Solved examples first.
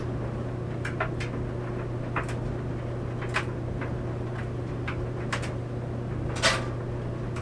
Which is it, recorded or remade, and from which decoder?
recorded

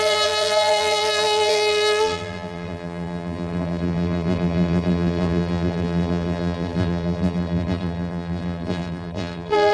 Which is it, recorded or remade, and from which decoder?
remade, vocoder, BigVGAN v2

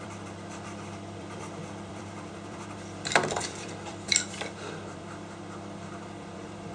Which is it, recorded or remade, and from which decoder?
remade, vocoder, BigVGAN v2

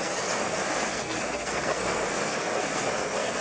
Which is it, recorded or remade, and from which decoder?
remade, codec, SNAC